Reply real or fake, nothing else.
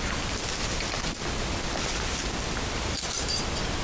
real